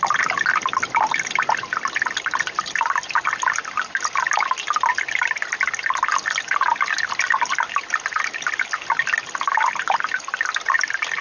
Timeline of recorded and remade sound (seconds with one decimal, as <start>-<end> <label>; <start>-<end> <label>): 0.0-11.2 recorded